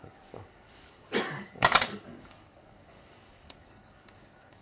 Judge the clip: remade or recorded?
remade